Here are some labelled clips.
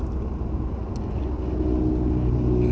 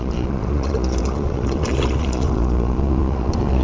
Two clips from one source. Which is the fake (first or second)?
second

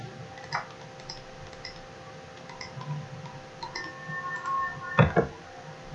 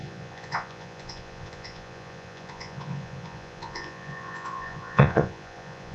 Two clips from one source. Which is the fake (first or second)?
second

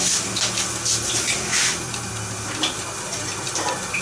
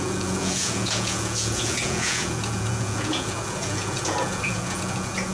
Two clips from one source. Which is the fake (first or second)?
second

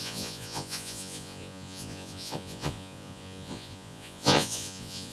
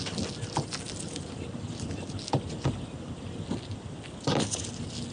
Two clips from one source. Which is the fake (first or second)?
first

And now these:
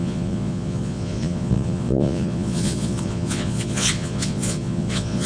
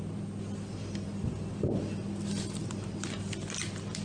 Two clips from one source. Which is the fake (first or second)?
first